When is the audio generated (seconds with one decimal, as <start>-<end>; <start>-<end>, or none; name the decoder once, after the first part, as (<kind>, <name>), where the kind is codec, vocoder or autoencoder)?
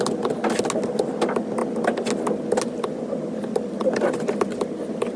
none